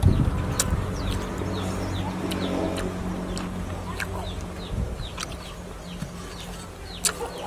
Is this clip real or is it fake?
real